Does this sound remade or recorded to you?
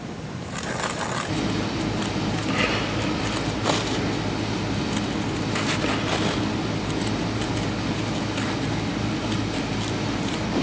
recorded